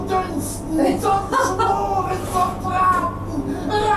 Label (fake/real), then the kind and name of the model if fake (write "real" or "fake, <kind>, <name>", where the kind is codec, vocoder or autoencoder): real